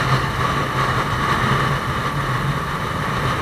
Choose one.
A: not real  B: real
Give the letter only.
B